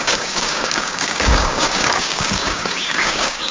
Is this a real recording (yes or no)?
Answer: no